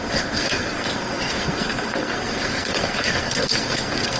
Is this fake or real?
fake